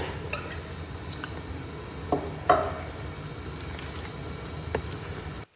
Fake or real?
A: real